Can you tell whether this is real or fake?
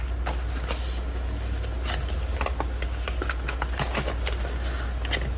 real